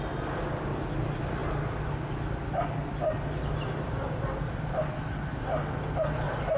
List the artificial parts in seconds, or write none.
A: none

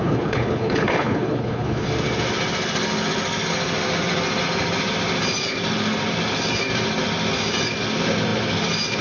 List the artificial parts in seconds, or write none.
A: 0.0-1.9 (codec, HILCodec)

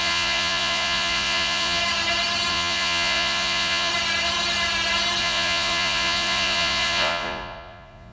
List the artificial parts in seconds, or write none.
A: 0.0-1.8 (vocoder, Vocos); 2.5-3.9; 5.2-8.1

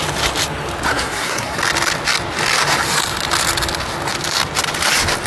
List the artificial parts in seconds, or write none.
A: 0.9-1.6 (codec, SNAC)

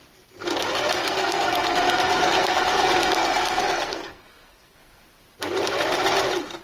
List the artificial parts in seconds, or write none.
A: 1.0-5.0 (codec, SNAC)